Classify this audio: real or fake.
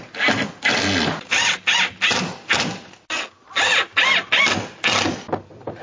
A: real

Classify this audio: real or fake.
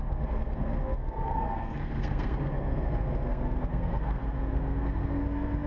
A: fake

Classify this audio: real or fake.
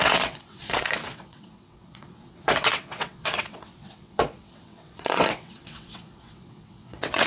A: fake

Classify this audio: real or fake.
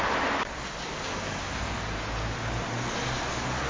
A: real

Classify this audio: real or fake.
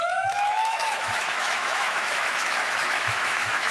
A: fake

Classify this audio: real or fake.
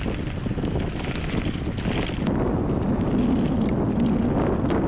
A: real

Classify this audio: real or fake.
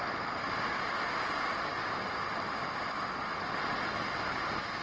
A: real